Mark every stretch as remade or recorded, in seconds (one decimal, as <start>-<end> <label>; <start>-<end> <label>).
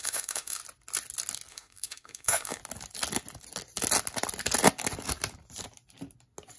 0.0-0.6 remade; 0.6-1.5 recorded; 1.5-2.6 remade; 2.6-6.6 recorded